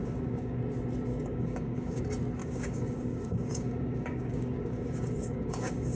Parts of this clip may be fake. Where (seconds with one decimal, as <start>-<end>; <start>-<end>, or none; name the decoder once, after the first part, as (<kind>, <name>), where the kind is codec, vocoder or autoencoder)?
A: 0.0-0.6 (codec, DAC); 1.1-2.0; 2.4-6.0